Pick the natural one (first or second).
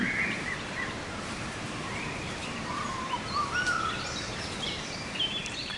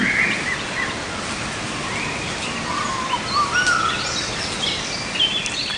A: second